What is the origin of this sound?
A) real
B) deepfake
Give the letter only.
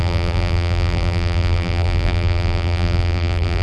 B